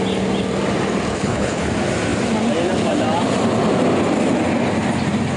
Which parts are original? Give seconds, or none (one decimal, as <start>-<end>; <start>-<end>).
0.0-1.1; 1.7-5.4